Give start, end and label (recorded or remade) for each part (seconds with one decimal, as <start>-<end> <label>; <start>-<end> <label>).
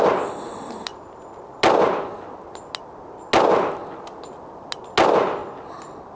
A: 0.0-6.2 recorded